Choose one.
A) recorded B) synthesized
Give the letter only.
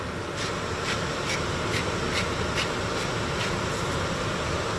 A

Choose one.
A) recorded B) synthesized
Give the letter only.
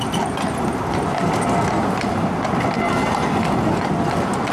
A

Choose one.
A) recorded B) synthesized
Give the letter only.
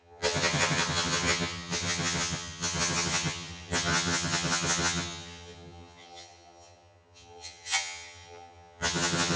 B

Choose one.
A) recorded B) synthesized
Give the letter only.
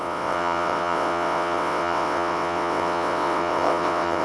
B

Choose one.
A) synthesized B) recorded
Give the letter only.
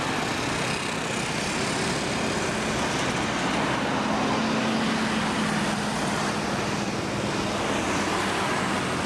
B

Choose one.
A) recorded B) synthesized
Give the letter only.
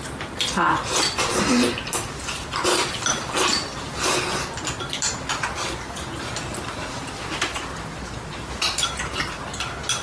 A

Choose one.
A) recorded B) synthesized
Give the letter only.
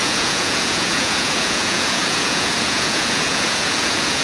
B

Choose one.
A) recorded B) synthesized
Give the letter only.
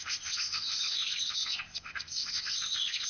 B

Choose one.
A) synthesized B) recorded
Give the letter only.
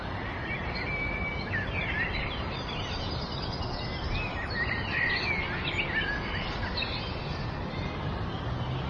B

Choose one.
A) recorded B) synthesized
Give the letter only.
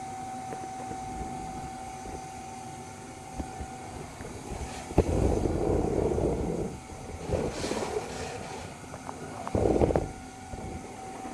B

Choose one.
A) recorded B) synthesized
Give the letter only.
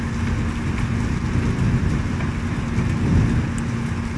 A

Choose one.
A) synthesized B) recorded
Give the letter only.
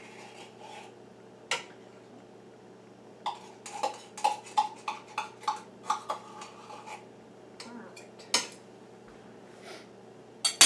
B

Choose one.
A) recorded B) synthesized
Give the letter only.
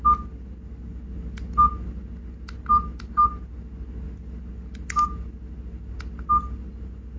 A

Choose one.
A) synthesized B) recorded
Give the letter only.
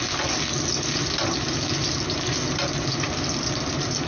B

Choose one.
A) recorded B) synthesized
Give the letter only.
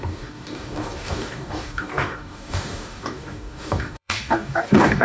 B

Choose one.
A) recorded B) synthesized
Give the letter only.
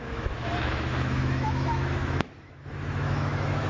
B